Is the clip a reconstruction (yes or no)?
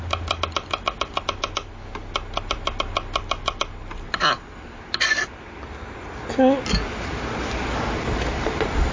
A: no